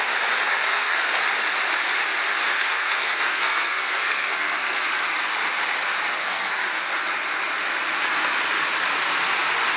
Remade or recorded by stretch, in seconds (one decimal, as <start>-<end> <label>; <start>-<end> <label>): 0.0-0.5 recorded; 0.5-1.2 remade; 1.2-2.5 recorded; 2.5-4.8 remade; 4.8-6.2 recorded; 6.2-6.8 remade; 6.8-9.8 recorded